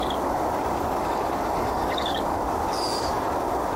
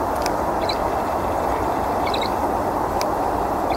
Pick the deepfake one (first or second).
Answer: first